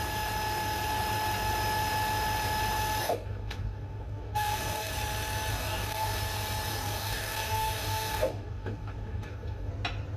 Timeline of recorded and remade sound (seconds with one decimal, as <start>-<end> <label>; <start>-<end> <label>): 0.0-3.0 recorded; 3.0-4.9 remade; 4.9-5.5 recorded; 5.5-6.2 remade; 6.2-6.7 recorded; 6.7-9.7 remade; 9.7-10.2 recorded